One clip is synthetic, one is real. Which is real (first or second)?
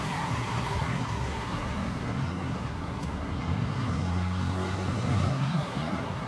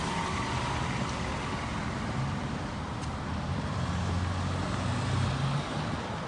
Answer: second